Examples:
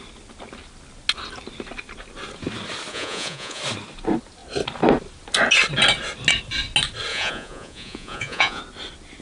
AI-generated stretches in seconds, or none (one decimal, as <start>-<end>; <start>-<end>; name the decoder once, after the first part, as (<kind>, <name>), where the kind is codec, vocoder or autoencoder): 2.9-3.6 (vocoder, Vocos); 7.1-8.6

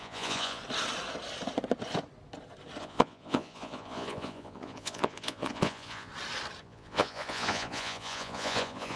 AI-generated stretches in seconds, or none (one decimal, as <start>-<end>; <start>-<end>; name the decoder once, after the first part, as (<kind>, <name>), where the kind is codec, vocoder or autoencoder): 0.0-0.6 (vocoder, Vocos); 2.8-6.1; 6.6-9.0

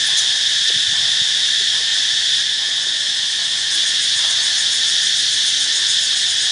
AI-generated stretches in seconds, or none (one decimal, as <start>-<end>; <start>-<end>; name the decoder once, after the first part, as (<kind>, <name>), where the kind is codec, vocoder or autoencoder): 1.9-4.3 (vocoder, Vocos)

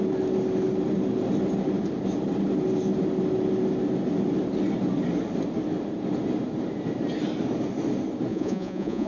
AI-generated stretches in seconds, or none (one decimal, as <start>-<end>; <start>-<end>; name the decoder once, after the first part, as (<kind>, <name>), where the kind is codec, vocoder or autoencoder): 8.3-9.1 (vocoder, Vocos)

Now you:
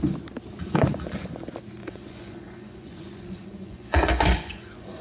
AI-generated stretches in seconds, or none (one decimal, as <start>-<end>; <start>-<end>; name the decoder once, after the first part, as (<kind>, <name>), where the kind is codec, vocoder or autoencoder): 0.6-1.3 (vocoder, Vocos); 1.8-5.0

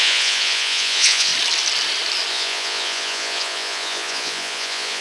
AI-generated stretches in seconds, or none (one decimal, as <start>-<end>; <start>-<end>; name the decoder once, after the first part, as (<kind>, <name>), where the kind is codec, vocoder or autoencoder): 0.0-1.3 (vocoder, Vocos); 2.3-5.0

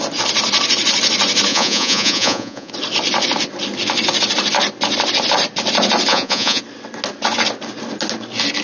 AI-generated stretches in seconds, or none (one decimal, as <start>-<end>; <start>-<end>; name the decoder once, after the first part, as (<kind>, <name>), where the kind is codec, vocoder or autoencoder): 1.5-2.7 (vocoder, Vocos); 6.1-6.6

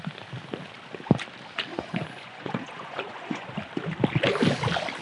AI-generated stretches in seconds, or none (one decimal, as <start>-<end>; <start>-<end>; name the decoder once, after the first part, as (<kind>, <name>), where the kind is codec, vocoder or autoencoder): 1.7-3.5 (vocoder, Vocos)